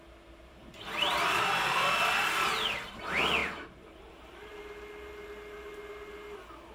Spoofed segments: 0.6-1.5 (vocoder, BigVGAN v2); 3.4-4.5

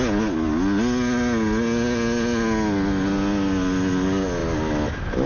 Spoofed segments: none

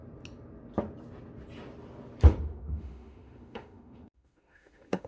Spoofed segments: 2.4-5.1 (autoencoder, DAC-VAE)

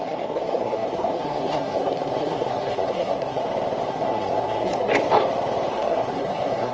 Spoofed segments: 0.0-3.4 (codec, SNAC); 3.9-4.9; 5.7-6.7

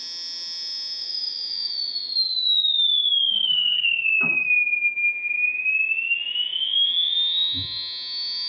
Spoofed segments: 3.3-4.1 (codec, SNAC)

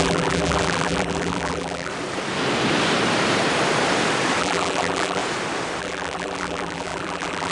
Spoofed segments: 0.0-1.9 (vocoder, BigVGAN v2); 4.4-5.2; 5.8-7.5

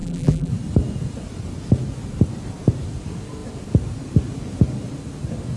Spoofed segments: 0.0-0.5 (vocoder, BigVGAN v2)